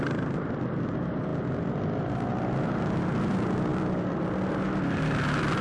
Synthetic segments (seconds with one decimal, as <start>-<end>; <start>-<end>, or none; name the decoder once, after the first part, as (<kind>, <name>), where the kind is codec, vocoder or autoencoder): 0.0-5.6 (vocoder, BigVGAN v2)